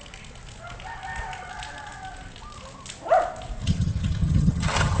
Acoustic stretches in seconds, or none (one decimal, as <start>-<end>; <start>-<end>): 0.0-3.6